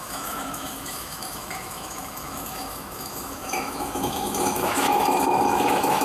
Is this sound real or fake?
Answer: fake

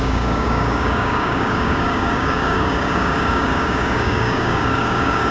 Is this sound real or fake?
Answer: fake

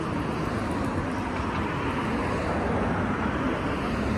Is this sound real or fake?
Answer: real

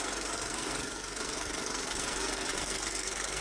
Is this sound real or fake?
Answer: fake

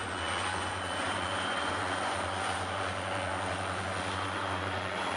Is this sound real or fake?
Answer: fake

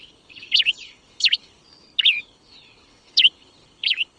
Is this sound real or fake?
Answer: fake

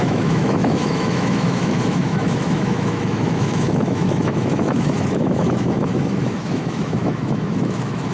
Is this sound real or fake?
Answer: fake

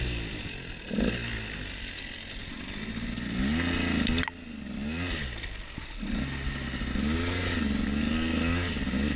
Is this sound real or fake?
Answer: real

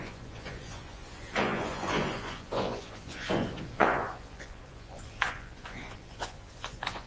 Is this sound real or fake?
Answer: fake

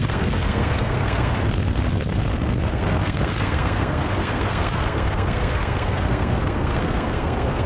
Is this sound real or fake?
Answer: fake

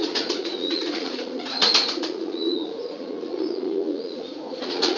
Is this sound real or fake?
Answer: fake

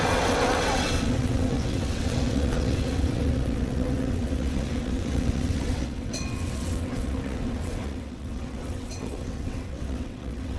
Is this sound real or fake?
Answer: fake